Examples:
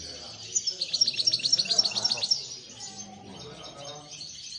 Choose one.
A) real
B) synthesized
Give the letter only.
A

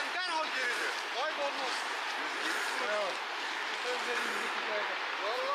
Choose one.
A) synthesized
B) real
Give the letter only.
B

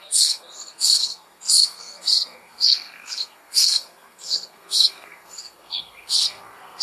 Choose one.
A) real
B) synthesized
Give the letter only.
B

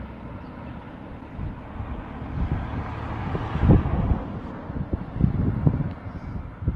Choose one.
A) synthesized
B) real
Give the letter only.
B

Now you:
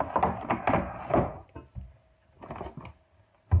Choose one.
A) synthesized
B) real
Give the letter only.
B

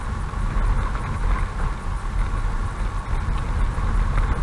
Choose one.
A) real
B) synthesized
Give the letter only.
A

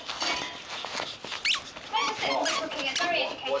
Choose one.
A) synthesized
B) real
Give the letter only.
B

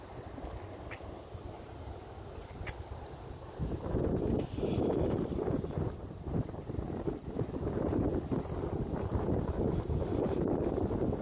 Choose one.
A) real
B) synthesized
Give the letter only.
A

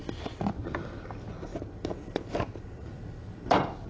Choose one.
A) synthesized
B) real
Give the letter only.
B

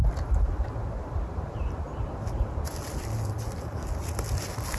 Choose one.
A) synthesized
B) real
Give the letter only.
B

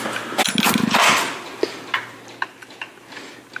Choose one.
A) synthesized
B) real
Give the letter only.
B